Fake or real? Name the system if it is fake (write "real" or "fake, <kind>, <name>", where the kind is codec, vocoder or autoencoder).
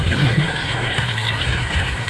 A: fake, codec, SNAC